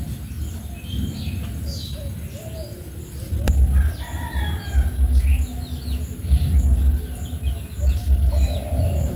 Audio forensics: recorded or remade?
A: recorded